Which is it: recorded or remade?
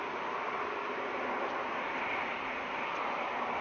recorded